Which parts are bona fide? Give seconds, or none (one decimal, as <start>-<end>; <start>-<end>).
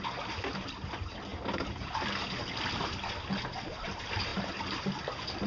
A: 0.0-5.5